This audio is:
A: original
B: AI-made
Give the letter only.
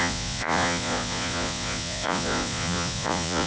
B